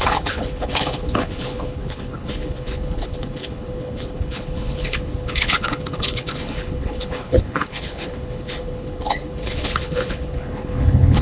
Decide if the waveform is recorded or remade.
remade